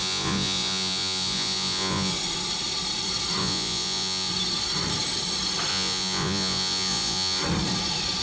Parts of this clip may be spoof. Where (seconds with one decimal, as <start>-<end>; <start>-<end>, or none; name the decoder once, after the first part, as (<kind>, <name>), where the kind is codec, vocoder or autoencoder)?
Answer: 0.0-2.1 (vocoder, Vocos); 3.4-4.3; 5.7-7.4

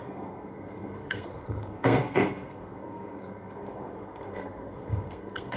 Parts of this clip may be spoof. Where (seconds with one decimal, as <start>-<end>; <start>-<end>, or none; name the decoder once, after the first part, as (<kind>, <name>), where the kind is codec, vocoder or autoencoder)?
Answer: 0.0-5.6 (codec, SNAC)

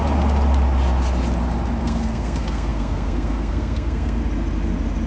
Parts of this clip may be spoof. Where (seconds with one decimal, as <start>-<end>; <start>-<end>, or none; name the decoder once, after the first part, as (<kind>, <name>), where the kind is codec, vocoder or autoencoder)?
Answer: 1.8-4.2 (codec, SNAC)